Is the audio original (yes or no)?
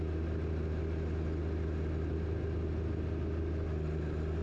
yes